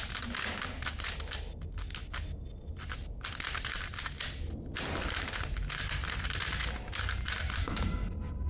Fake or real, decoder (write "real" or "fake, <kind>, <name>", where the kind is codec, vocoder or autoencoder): real